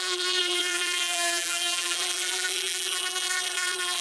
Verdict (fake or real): fake